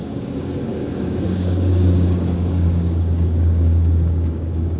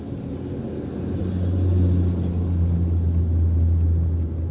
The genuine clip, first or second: second